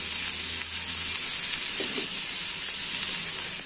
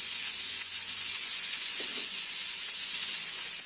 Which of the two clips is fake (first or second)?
second